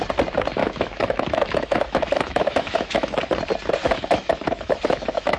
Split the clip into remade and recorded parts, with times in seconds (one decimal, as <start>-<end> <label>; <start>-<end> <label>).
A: 0.0-0.6 recorded; 0.6-3.2 remade; 3.2-3.8 recorded; 3.8-5.4 remade